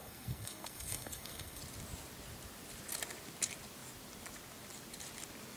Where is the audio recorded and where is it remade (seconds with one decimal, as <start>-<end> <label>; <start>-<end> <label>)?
0.0-1.6 remade; 1.6-5.6 recorded